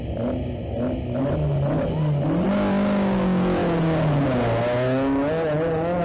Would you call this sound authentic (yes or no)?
yes